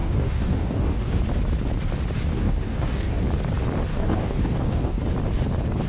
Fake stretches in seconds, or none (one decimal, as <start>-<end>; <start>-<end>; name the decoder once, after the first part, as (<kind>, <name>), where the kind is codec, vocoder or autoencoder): 0.0-1.2 (codec, DAC); 2.3-3.2; 3.9-5.0